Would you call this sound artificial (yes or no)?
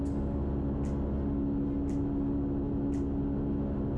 no